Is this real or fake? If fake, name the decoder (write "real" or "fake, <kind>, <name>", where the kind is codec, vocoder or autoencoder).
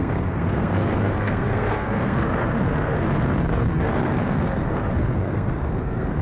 fake, codec, SNAC